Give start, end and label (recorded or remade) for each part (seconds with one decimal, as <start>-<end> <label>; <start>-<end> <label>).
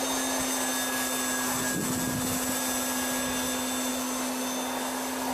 0.0-5.3 recorded